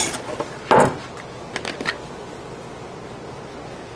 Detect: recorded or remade recorded